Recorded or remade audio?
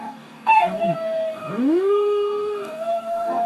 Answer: remade